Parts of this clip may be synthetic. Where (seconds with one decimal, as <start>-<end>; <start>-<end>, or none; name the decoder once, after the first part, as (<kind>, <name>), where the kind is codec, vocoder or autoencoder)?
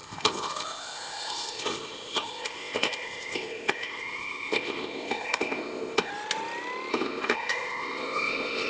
0.0-6.1 (codec, ZipCodec); 6.9-8.7